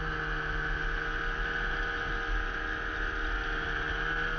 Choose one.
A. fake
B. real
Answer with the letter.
B